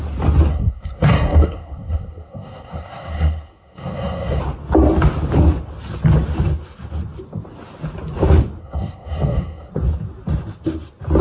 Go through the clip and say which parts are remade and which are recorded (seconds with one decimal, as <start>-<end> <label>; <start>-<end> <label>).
0.0-0.5 recorded; 0.5-4.4 remade; 4.4-8.6 recorded; 8.6-9.7 remade; 9.7-11.2 recorded